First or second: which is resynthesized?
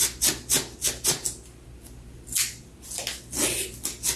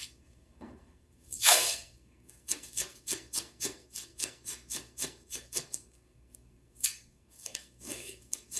second